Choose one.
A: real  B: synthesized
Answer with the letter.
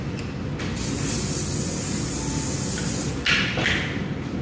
A